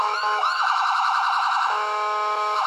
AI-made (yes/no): yes